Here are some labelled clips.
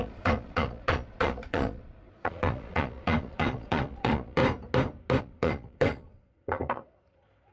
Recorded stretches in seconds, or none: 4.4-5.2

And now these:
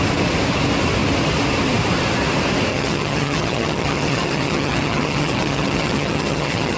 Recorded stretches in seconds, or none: 0.0-2.7

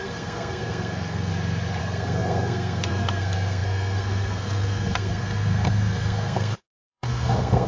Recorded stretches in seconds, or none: 1.3-1.8

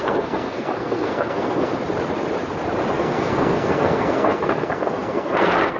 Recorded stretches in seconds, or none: 1.7-2.9

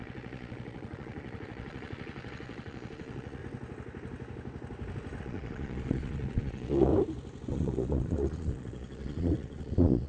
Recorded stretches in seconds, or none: 3.4-5.2; 6.9-7.5